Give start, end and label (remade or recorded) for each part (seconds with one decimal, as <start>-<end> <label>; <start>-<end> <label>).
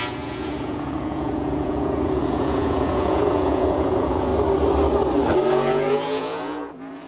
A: 0.0-4.3 remade; 4.3-5.5 recorded; 5.5-7.1 remade